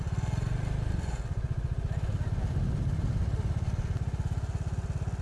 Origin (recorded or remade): recorded